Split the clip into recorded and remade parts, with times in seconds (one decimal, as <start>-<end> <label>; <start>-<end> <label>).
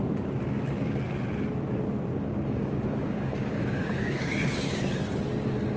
0.0-2.1 recorded; 2.1-4.8 remade; 4.8-5.8 recorded